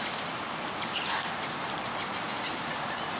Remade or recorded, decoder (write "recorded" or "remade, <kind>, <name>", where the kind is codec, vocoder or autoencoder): remade, vocoder, BigVGAN v2